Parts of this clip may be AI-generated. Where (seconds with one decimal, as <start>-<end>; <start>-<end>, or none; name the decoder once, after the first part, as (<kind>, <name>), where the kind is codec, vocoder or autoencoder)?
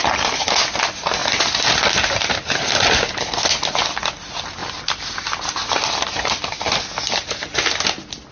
none